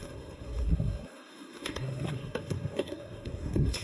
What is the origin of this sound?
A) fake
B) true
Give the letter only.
A